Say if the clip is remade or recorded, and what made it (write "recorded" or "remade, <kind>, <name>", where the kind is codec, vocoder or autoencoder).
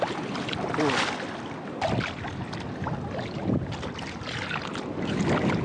recorded